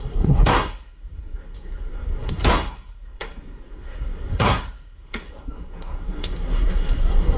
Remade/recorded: remade